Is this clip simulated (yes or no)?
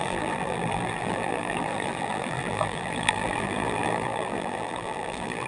yes